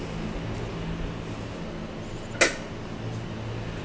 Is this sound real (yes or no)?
yes